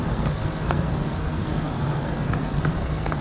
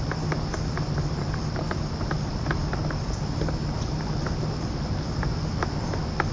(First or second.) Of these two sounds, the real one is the second